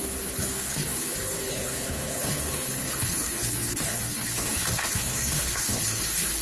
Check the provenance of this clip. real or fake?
fake